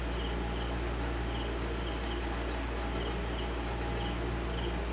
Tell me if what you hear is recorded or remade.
recorded